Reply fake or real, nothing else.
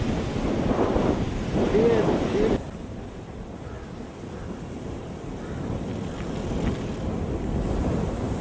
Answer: real